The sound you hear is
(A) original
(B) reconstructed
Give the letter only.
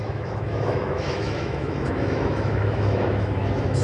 B